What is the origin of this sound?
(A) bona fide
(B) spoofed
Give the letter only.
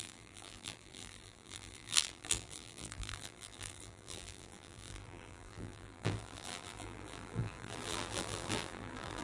B